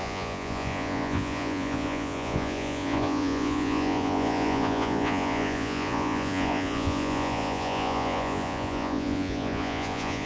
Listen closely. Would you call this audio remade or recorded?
remade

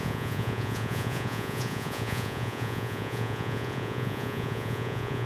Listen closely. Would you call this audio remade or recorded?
remade